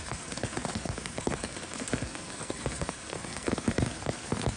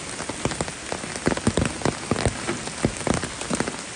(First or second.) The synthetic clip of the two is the first